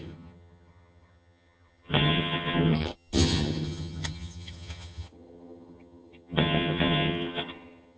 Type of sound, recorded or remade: remade